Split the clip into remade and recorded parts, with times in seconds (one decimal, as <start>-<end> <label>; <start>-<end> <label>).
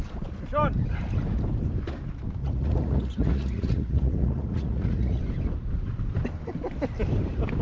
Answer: 0.0-2.4 recorded; 2.4-5.2 remade; 5.2-7.6 recorded